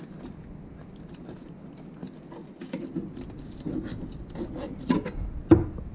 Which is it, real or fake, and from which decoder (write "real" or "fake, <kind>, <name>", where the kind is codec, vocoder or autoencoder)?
real